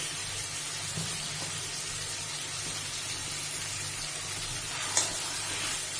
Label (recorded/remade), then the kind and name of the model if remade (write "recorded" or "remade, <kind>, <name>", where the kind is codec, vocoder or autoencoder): recorded